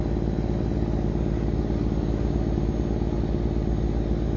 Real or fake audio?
real